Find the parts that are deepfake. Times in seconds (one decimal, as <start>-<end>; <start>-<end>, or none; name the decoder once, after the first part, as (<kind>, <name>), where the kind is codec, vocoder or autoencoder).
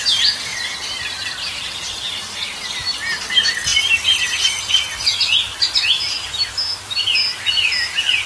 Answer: 0.5-2.1 (vocoder, BigVGAN v2)